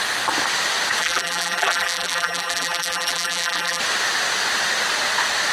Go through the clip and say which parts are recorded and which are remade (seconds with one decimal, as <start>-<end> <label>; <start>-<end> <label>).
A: 0.0-1.0 recorded; 1.0-3.8 remade; 3.8-5.5 recorded